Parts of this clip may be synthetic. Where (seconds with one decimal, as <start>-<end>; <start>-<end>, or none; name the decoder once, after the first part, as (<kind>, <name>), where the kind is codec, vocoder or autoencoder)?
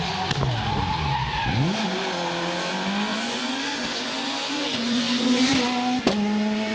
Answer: 3.1-5.5 (vocoder, Vocos)